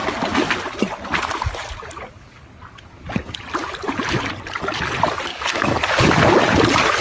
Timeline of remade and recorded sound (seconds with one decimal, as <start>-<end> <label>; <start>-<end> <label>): 0.0-5.3 recorded; 5.3-5.8 remade; 5.8-7.0 recorded